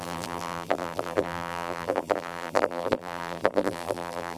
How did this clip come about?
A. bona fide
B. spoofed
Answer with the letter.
B